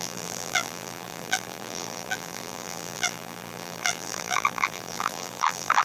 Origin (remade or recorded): remade